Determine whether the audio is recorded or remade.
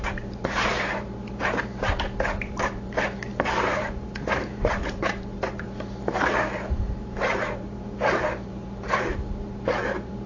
remade